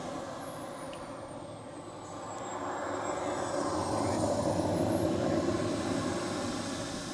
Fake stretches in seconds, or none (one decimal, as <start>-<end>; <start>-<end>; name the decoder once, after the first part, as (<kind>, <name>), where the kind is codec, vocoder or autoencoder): none